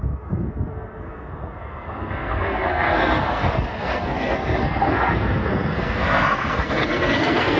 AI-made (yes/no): yes